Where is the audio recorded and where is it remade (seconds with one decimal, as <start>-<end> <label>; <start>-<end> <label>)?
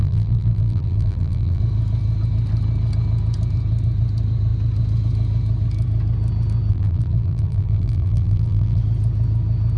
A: 0.0-1.6 remade; 1.6-6.7 recorded; 6.7-8.8 remade; 8.8-9.8 recorded